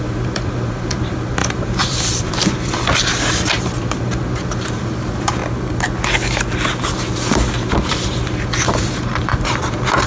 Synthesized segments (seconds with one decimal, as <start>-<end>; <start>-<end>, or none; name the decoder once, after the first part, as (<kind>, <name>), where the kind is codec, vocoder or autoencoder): 0.0-5.4 (vocoder, BigVGAN v2); 7.8-10.1

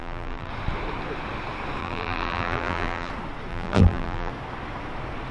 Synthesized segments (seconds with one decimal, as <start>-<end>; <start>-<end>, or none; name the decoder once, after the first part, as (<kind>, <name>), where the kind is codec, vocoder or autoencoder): 0.0-0.5 (vocoder, BigVGAN v2); 1.8-3.1; 3.5-4.3

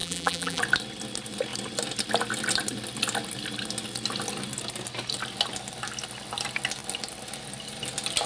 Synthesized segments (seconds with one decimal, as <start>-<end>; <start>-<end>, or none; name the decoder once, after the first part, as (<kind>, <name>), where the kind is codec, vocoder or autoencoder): 0.0-0.6 (vocoder, BigVGAN v2)